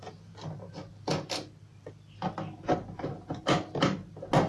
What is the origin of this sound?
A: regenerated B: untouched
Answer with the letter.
B